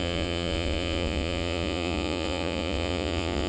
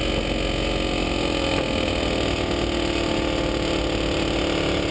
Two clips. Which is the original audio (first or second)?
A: second